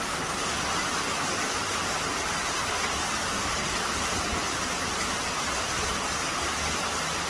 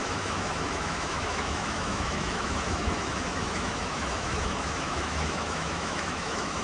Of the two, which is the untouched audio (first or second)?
first